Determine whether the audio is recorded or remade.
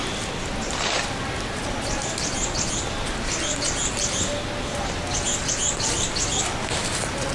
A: recorded